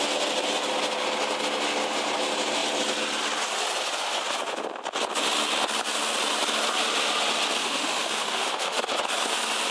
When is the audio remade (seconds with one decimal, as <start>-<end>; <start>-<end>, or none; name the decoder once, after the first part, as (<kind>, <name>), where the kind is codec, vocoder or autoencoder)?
7.6-8.9 (autoencoder, DAC-VAE)

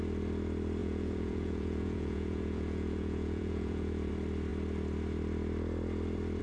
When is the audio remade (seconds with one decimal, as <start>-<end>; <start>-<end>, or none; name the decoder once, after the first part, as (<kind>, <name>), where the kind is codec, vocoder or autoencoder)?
0.8-4.1 (vocoder, Vocos)

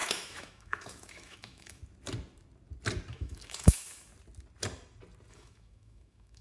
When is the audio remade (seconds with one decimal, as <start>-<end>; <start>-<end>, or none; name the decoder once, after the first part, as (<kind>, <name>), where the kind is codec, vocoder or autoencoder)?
0.0-1.8 (autoencoder, DAC-VAE); 3.1-4.1; 5.3-6.4

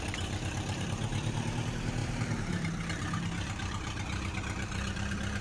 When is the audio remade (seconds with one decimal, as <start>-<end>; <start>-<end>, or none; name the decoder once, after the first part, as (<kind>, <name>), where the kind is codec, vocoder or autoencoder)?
0.0-5.4 (vocoder, BigVGAN v2)

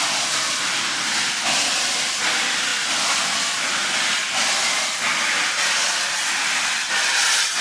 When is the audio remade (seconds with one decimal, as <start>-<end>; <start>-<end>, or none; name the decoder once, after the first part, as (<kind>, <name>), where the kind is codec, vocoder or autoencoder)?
none

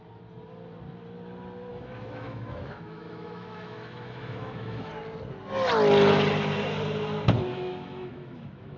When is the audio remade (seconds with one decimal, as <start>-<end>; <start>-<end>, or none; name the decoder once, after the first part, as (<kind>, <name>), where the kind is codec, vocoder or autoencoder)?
1.7-4.9 (autoencoder, DAC-VAE); 7.5-8.8

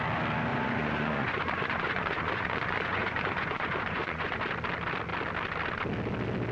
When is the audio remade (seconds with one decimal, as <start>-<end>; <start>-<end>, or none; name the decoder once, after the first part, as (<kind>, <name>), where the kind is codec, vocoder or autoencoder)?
0.5-4.4 (vocoder, Vocos)